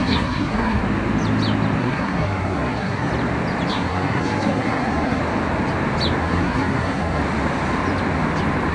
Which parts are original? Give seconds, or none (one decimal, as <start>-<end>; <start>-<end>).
0.8-1.8; 3.1-3.7; 5.2-6.2; 7.2-8.7